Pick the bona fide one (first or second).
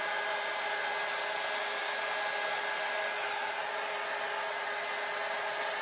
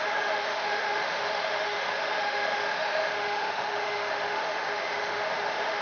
first